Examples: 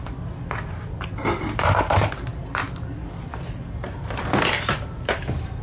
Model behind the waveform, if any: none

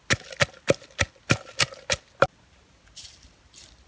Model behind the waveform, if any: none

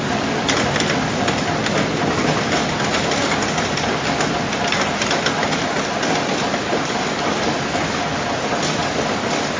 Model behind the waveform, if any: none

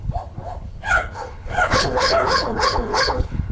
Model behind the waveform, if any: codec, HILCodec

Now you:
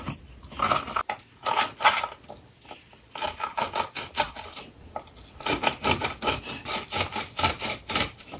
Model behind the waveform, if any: none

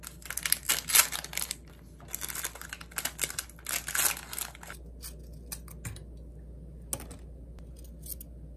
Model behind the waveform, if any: none